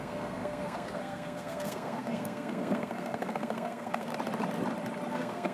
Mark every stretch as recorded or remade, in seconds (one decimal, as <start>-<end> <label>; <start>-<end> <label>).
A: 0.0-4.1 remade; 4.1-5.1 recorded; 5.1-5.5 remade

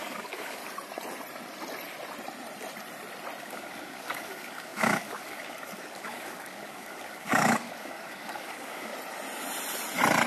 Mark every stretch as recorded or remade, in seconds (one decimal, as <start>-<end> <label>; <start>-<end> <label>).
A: 0.0-0.6 remade; 0.6-3.4 recorded; 3.4-8.9 remade; 8.9-10.3 recorded

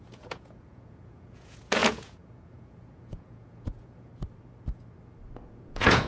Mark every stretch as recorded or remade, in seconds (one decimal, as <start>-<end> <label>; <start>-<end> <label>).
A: 0.0-4.1 remade; 4.1-5.5 recorded; 5.5-6.1 remade

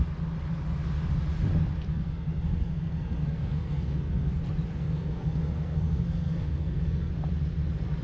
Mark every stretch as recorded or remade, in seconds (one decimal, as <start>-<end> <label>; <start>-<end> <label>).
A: 0.0-1.9 recorded; 1.9-4.3 remade; 4.3-4.8 recorded; 4.8-7.1 remade; 7.1-8.0 recorded

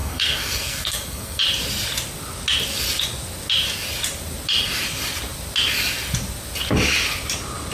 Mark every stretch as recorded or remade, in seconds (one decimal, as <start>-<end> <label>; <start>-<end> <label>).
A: 0.0-1.4 remade; 1.4-7.7 recorded

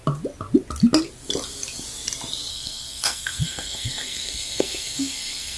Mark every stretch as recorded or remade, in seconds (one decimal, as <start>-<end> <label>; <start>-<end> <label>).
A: 0.0-2.5 recorded; 2.5-5.6 remade